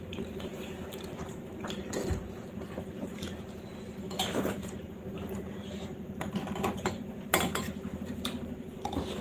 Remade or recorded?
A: remade